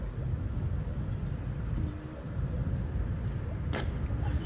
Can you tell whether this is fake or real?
real